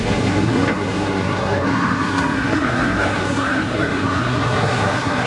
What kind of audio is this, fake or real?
fake